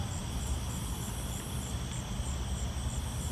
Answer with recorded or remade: recorded